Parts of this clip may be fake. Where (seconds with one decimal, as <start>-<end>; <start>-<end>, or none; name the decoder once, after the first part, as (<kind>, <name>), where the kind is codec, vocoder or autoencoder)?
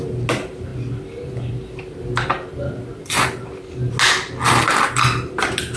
none